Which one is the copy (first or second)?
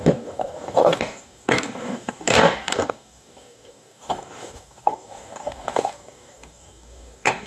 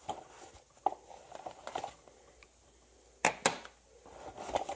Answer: first